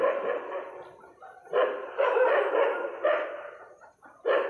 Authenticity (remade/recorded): recorded